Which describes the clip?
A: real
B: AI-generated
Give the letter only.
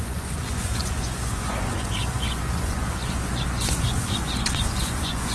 B